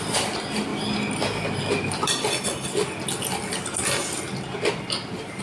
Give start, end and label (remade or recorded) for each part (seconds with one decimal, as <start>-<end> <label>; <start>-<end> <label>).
0.0-0.7 remade; 0.7-1.7 recorded; 1.7-2.5 remade; 2.5-5.4 recorded